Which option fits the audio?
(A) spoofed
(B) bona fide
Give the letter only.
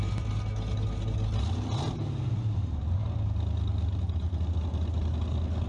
B